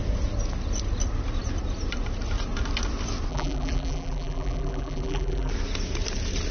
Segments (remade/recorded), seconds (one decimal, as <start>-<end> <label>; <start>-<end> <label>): 0.0-3.3 recorded; 3.3-5.5 remade; 5.5-6.5 recorded